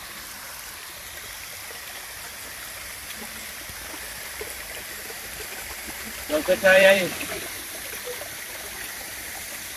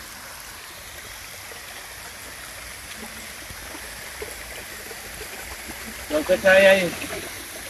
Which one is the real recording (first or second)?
second